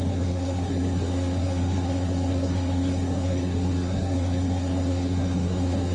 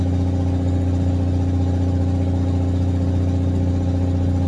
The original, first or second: second